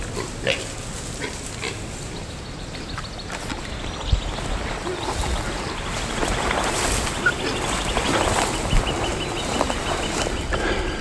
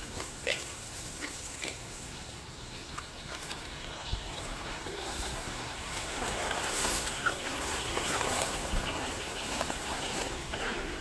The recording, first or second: first